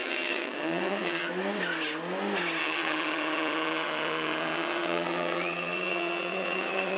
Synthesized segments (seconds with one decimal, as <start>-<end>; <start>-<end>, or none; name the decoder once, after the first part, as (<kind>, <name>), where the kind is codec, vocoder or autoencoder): 0.0-1.3 (vocoder, WaveNeXt); 2.6-7.0